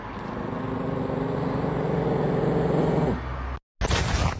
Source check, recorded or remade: recorded